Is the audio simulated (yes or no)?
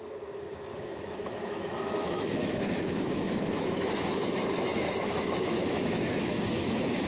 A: yes